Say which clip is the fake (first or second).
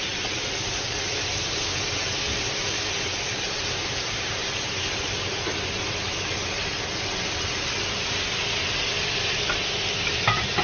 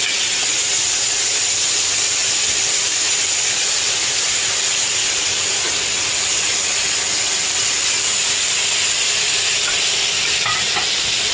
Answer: second